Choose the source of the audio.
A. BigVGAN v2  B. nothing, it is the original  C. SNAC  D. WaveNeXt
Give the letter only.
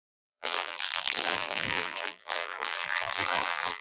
A